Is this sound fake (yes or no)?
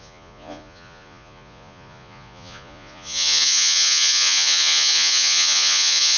yes